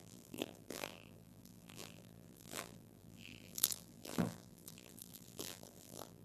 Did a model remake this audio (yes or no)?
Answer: yes